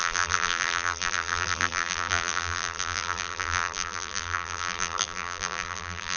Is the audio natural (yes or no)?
no